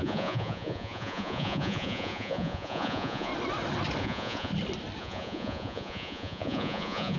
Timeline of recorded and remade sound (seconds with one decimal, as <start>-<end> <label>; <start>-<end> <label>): 0.0-3.3 remade; 3.3-4.0 recorded; 4.0-4.5 remade; 4.5-5.0 recorded; 5.0-7.2 remade